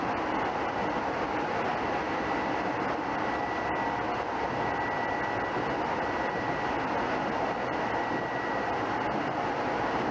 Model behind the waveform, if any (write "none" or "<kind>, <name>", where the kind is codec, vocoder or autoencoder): none